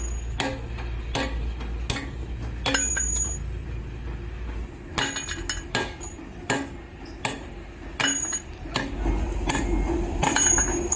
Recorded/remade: recorded